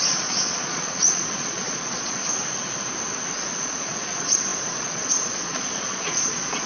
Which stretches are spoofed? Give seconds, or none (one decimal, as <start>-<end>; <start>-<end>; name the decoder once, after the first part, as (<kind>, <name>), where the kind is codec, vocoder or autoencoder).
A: 0.0-2.2 (vocoder, Vocos); 3.5-6.7